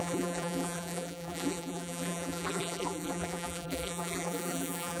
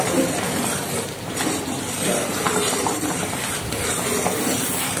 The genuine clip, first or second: second